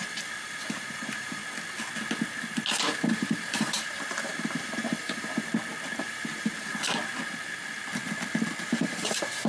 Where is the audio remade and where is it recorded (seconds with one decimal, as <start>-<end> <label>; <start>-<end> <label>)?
0.0-1.4 remade; 1.4-3.1 recorded; 3.1-5.5 remade; 5.5-6.0 recorded; 6.0-6.7 remade; 6.7-8.6 recorded; 8.6-9.5 remade